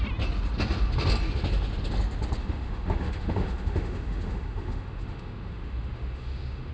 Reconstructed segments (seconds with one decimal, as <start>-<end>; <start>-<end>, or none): 2.4-6.7